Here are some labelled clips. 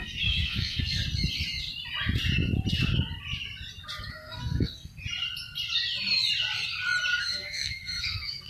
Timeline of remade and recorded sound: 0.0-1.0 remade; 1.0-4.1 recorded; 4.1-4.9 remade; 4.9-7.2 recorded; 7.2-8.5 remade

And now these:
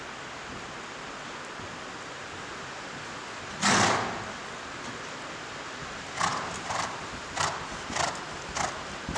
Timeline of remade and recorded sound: 0.0-9.2 recorded

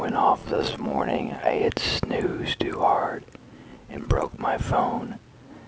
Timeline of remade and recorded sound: 0.0-0.4 recorded; 0.4-1.6 remade; 1.6-3.7 recorded; 3.7-4.4 remade; 4.4-5.7 recorded